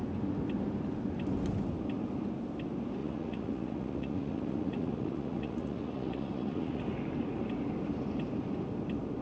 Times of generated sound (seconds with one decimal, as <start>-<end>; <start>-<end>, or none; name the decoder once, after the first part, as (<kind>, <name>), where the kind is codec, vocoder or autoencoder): 3.0-6.8 (vocoder, Vocos)